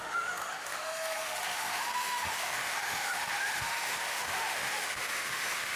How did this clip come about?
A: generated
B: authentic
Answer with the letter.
A